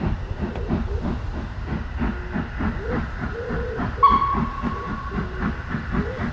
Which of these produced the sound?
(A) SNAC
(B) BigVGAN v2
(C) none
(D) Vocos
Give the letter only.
C